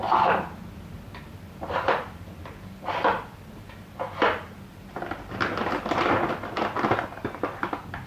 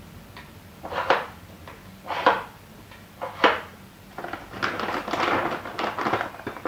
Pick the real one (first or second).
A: second